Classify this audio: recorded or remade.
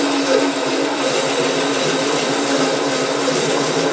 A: recorded